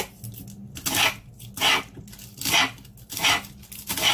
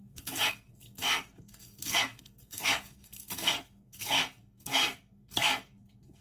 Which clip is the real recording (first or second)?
first